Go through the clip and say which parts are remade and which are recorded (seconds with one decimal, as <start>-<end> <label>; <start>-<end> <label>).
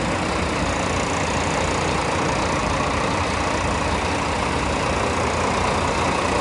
0.0-2.6 recorded; 2.6-3.2 remade; 3.2-6.4 recorded